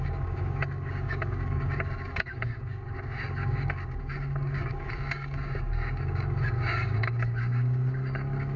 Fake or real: fake